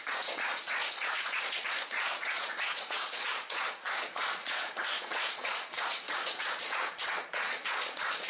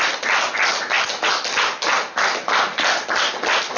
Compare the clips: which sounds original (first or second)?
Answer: second